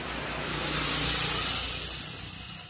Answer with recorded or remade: recorded